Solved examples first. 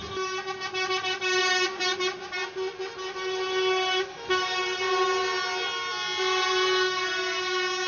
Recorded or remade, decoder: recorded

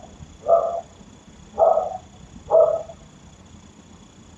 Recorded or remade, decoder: recorded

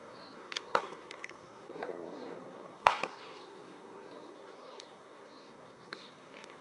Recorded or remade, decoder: remade, codec, SNAC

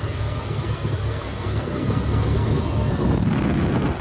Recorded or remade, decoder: remade, codec, SNAC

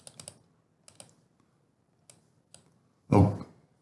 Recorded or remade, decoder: recorded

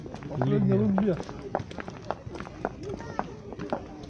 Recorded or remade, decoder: recorded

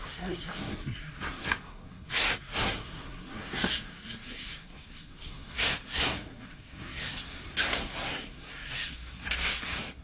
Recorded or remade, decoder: remade, codec, SNAC